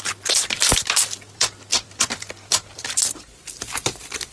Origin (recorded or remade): remade